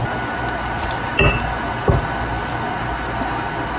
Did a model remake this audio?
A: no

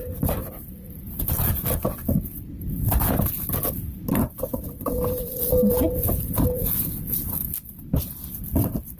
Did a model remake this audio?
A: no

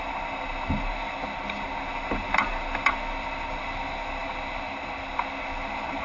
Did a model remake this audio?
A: no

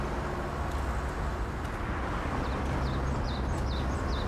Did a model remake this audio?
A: no